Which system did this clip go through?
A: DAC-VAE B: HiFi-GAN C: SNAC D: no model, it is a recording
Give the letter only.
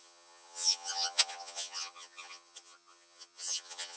B